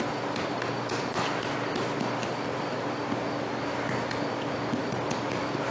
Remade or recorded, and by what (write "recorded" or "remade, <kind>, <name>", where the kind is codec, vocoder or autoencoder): recorded